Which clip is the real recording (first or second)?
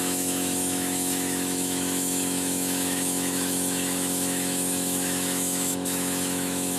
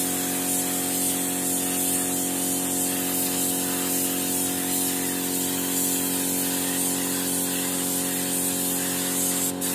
second